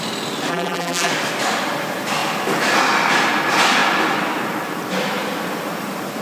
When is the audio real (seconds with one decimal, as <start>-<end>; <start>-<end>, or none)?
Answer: 0.0-0.5; 1.1-6.2